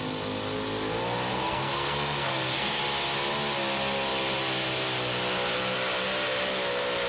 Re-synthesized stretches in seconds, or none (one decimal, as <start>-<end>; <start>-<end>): 1.3-2.8